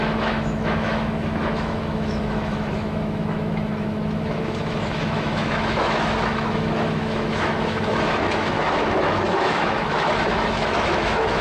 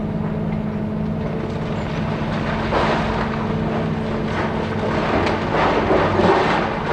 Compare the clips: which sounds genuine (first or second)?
second